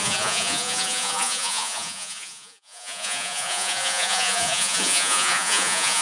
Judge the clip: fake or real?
fake